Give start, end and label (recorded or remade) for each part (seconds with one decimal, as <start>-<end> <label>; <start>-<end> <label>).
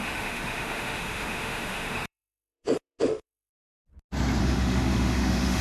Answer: 0.0-3.5 remade; 3.5-4.4 recorded; 4.4-5.6 remade